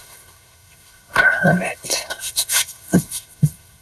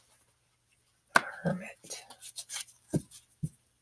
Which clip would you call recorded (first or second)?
second